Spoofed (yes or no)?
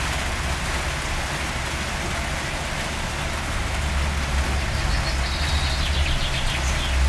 no